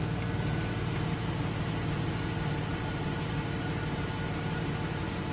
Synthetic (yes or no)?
no